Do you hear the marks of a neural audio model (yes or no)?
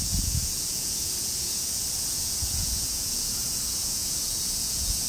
yes